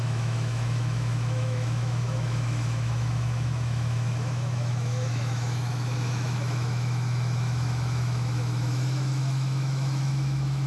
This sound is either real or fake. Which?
fake